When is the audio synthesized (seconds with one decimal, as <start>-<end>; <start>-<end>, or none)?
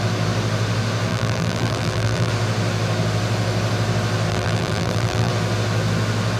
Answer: 1.1-2.3; 4.3-5.3